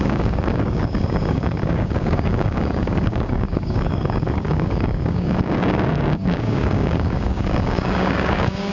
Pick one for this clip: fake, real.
fake